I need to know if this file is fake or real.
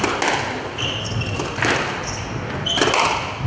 real